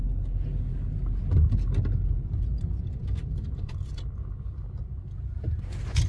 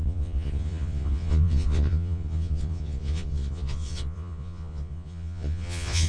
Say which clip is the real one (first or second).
first